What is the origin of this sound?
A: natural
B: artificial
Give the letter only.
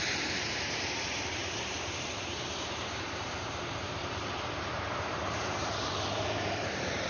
B